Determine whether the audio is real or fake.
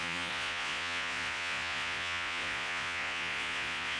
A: fake